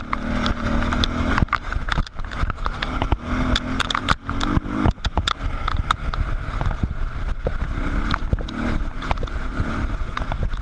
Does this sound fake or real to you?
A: real